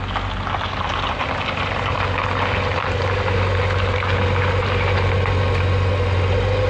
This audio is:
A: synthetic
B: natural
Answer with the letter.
B